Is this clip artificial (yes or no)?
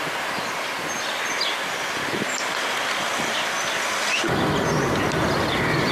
no